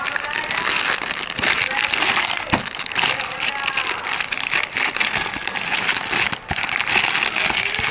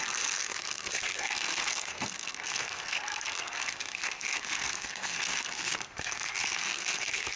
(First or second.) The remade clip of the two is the second